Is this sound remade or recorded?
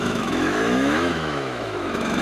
remade